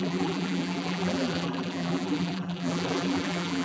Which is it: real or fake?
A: fake